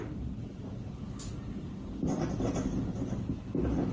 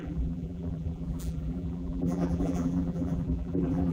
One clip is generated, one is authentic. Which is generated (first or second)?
second